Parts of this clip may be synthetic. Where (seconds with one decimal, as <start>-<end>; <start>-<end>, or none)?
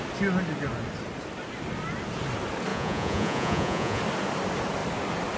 2.7-4.0